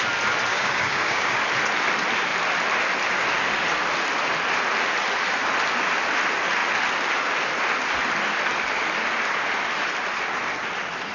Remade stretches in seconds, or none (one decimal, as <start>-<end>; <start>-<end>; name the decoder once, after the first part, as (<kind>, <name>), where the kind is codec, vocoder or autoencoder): 0.5-1.4 (codec, DAC)